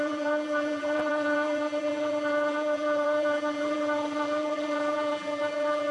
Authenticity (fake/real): fake